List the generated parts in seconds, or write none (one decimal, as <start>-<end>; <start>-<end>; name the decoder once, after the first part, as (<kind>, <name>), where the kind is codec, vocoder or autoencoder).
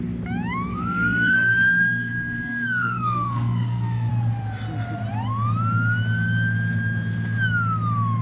0.7-4.1 (codec, SNAC)